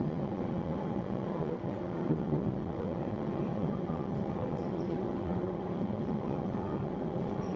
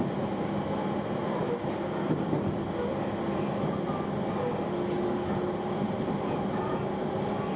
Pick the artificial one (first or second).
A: first